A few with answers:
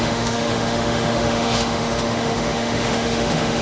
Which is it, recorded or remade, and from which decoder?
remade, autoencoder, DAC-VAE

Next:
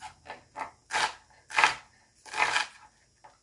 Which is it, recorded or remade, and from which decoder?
recorded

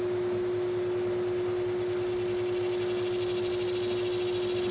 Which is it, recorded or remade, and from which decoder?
recorded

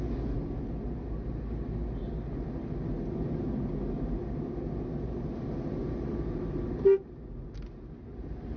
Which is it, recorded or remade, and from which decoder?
recorded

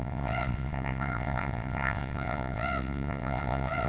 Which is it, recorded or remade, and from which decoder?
remade, vocoder, WaveNeXt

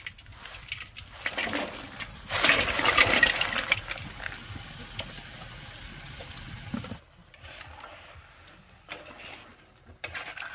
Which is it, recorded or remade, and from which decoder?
recorded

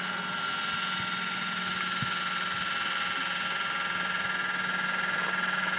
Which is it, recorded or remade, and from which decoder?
recorded